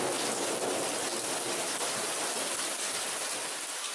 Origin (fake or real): real